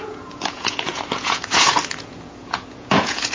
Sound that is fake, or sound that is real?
fake